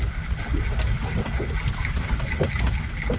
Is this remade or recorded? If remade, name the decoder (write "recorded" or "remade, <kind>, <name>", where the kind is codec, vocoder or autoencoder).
recorded